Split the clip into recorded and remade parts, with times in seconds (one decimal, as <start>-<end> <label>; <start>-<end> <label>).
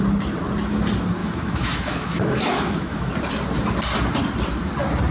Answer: 0.0-1.2 recorded; 1.2-3.1 remade; 3.1-5.1 recorded